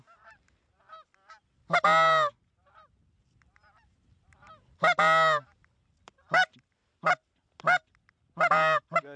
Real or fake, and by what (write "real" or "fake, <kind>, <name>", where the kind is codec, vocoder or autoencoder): real